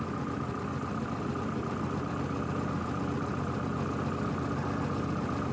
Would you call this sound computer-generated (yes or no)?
no